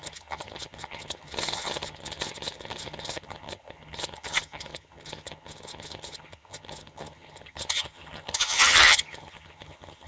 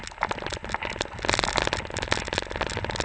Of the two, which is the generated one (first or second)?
first